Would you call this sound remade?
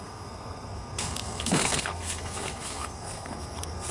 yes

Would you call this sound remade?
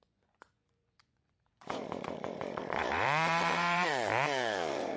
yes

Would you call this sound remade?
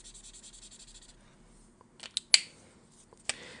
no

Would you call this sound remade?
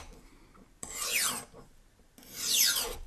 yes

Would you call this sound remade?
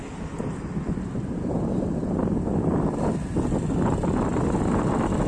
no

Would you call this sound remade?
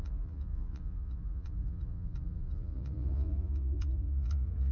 yes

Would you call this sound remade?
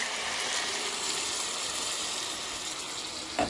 no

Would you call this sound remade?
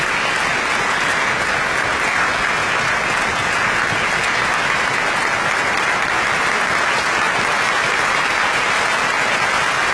no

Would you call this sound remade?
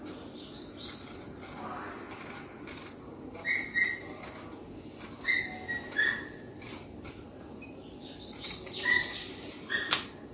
no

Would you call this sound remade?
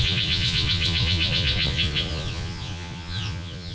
yes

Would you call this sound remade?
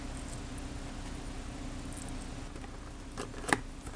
no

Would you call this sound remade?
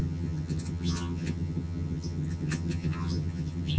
yes